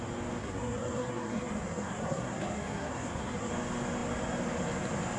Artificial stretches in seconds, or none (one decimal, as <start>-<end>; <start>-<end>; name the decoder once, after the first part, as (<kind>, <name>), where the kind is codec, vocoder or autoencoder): 0.4-3.5 (codec, SNAC)